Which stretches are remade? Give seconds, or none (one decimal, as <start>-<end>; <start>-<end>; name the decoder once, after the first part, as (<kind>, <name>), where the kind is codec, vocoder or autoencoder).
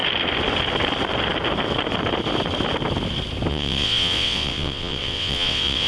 3.5-5.9 (vocoder, WaveNeXt)